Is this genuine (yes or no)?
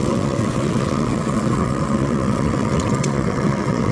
no